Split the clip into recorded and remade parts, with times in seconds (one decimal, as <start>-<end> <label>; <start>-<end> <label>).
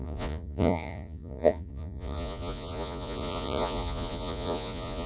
0.0-5.1 remade